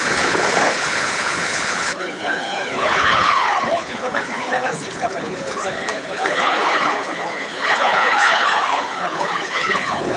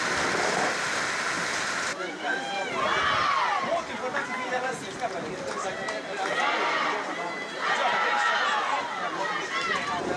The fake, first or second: first